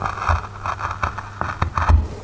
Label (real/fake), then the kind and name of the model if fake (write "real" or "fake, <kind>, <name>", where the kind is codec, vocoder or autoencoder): real